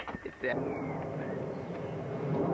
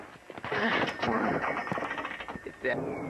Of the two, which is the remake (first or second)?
first